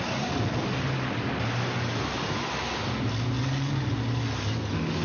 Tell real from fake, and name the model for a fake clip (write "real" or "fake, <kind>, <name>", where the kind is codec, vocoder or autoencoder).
real